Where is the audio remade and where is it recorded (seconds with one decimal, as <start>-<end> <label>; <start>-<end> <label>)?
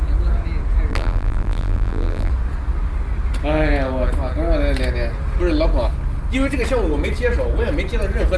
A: 0.0-0.9 recorded; 0.9-2.3 remade; 2.3-8.4 recorded